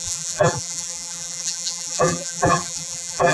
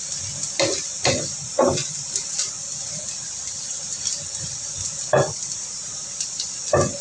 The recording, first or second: second